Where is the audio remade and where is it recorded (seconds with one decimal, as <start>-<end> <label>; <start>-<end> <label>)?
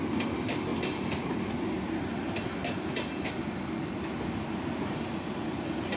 0.0-0.7 recorded; 0.7-1.5 remade; 1.5-5.4 recorded; 5.4-6.0 remade